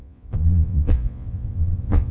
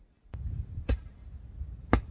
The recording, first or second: second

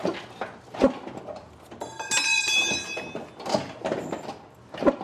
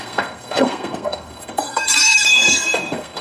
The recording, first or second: first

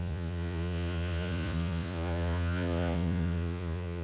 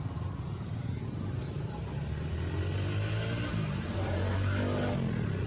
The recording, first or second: second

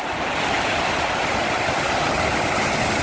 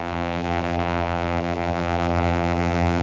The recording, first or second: first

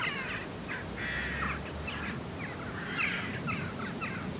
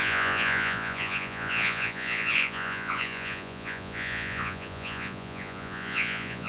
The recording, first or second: first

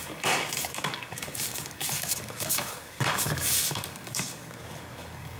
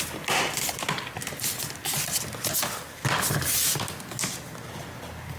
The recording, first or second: second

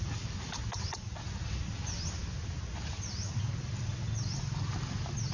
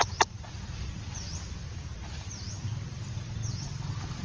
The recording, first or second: first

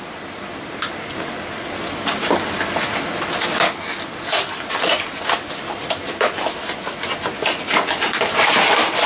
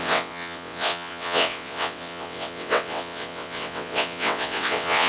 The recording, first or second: first